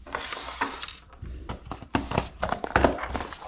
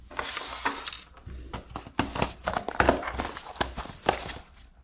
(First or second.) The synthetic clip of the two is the first